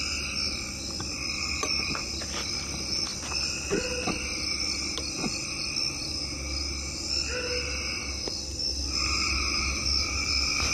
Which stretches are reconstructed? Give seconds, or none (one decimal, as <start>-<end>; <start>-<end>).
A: none